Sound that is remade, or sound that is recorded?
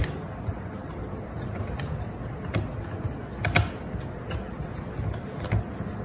recorded